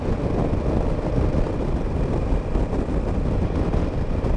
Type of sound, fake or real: real